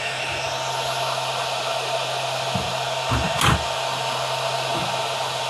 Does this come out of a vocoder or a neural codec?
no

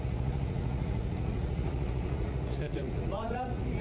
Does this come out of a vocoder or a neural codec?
yes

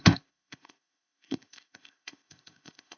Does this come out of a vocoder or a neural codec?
yes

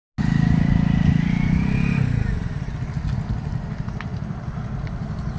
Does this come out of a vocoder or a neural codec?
no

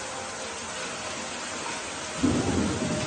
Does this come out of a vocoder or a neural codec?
no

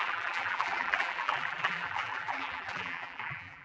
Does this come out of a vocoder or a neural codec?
yes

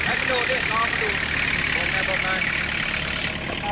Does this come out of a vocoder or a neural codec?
no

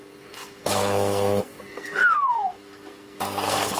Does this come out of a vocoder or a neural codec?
yes